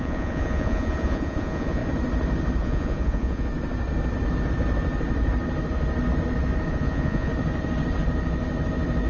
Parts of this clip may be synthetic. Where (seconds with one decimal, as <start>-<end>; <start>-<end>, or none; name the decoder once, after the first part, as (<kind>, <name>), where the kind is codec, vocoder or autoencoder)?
0.0-1.8 (vocoder, Vocos); 2.6-3.5; 6.7-7.3